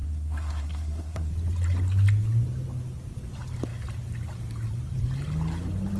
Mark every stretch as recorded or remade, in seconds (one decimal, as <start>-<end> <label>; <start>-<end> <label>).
0.0-1.3 remade; 1.3-6.0 recorded